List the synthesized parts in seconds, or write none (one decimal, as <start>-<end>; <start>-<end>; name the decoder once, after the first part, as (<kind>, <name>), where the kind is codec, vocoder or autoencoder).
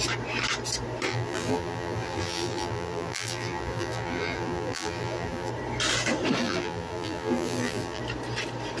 1.1-5.5 (vocoder, BigVGAN v2); 6.4-8.0